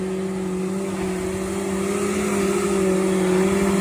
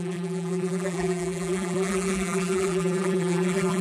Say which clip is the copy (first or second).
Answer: second